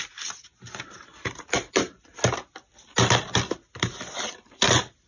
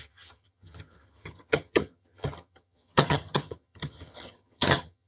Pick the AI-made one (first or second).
second